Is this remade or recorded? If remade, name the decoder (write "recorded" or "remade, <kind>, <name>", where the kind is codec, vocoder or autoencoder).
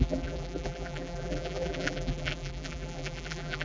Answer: remade, vocoder, BigVGAN v2